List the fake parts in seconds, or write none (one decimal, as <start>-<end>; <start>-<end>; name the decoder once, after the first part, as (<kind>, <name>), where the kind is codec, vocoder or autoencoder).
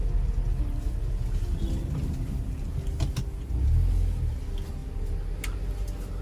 none